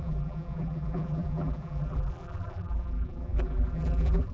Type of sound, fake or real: fake